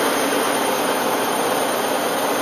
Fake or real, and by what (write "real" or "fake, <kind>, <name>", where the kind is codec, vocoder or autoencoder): real